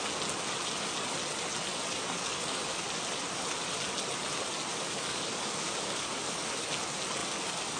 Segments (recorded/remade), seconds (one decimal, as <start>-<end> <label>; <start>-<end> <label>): 0.0-1.7 recorded; 1.7-2.8 remade; 2.8-4.7 recorded; 4.7-6.7 remade; 6.7-7.8 recorded